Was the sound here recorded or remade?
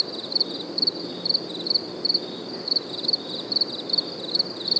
recorded